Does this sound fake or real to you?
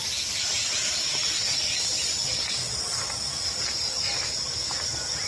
real